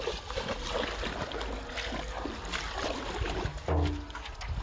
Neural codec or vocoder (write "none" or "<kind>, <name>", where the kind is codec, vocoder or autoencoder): none